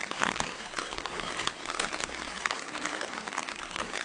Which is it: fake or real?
fake